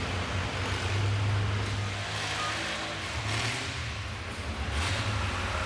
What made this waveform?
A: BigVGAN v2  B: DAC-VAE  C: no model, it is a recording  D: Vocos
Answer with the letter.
C